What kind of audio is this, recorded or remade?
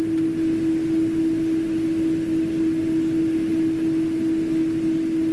recorded